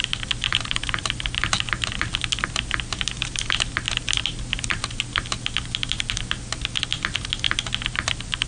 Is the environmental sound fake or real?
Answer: real